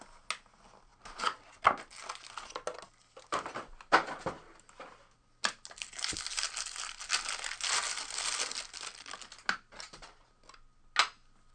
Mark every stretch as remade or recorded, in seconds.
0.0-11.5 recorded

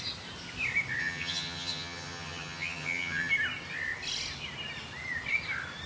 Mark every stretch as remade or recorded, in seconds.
0.0-1.0 recorded; 1.0-3.3 remade; 3.3-5.9 recorded

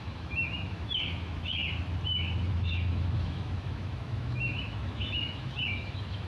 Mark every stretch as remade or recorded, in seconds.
0.0-1.6 remade; 1.6-2.5 recorded; 2.5-6.3 remade

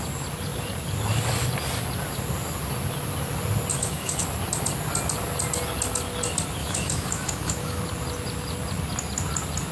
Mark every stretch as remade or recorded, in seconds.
0.0-3.7 recorded; 3.7-4.2 remade; 4.2-6.6 recorded; 6.6-7.8 remade; 7.8-9.7 recorded

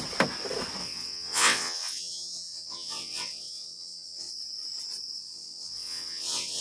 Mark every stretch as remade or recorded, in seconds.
0.0-0.8 recorded; 0.8-4.3 remade; 4.3-5.2 recorded; 5.2-6.6 remade

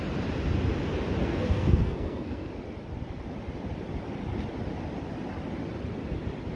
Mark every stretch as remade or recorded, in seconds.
0.0-1.2 recorded; 1.2-2.5 remade; 2.5-6.6 recorded

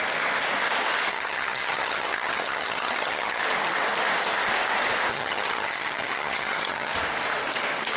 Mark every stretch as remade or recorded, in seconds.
0.0-1.1 recorded; 1.1-3.4 remade; 3.4-5.1 recorded; 5.1-6.9 remade; 6.9-8.0 recorded

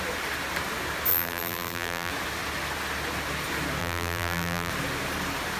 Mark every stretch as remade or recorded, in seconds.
0.0-1.1 recorded; 1.1-2.1 remade; 2.1-3.8 recorded; 3.8-4.7 remade; 4.7-5.6 recorded